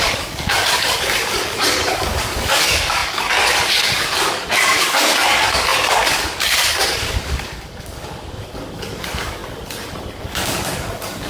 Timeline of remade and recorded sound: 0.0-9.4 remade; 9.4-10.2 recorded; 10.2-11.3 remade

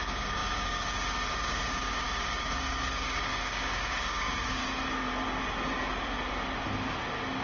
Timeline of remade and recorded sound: 0.0-4.6 remade; 4.6-7.4 recorded

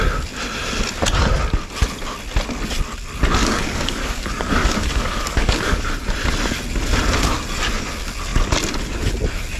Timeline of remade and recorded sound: 0.0-3.4 recorded; 3.4-5.9 remade; 5.9-9.6 recorded

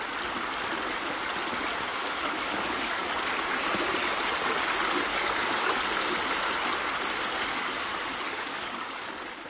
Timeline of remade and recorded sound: 0.0-1.9 recorded; 1.9-3.1 remade; 3.1-5.1 recorded; 5.1-5.8 remade; 5.8-7.5 recorded; 7.5-9.1 remade; 9.1-9.5 recorded

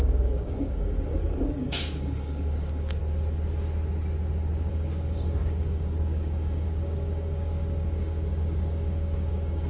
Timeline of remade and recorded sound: 0.0-3.0 remade; 3.0-4.7 recorded; 4.7-9.7 remade

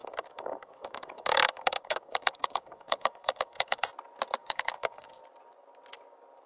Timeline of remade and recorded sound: 0.0-3.9 remade; 3.9-4.4 recorded; 4.4-5.2 remade; 5.2-6.5 recorded